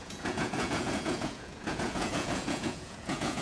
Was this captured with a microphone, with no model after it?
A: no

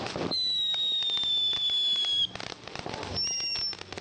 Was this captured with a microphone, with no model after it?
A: yes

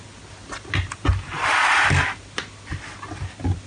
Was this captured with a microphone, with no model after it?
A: yes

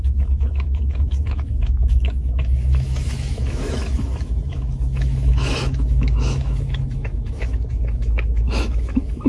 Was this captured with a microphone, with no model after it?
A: no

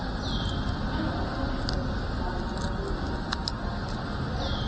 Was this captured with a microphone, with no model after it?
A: yes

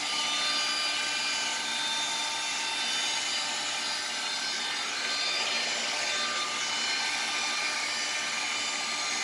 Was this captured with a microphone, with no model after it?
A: yes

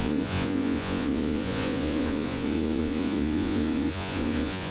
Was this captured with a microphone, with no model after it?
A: no